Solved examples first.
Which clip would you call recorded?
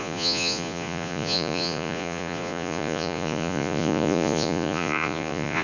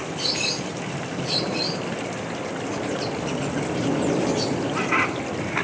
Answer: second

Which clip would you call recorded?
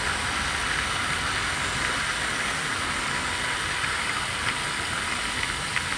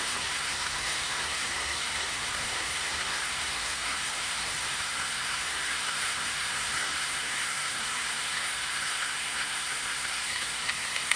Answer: first